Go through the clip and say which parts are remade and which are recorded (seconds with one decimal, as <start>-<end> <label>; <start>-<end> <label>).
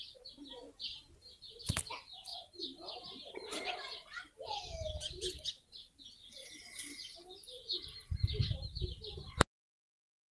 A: 0.0-2.3 recorded; 2.3-4.7 remade; 4.7-10.3 recorded